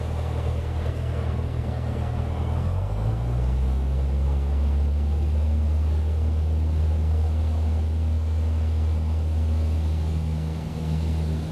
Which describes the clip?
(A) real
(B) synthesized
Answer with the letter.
B